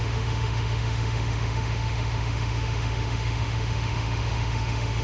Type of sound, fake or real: fake